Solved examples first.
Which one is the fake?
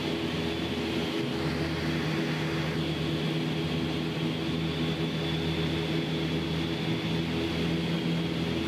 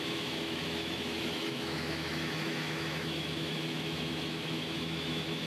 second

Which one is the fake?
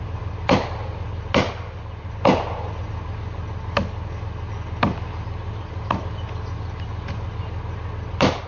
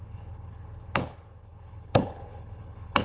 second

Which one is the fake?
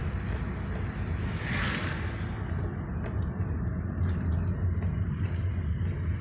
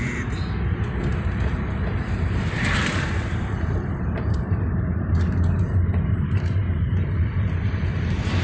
second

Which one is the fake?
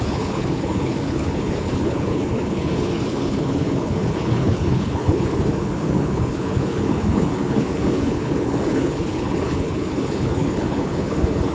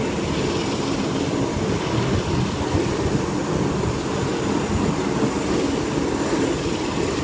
first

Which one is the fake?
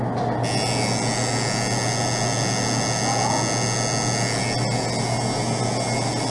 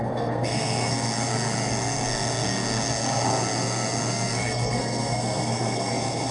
second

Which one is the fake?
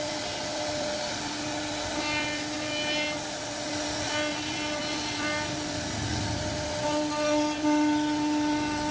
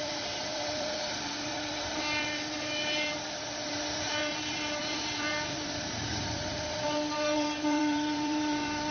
second